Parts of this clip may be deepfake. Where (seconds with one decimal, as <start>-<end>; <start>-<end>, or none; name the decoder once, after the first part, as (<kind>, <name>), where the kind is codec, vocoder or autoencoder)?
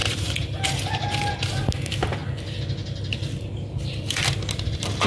none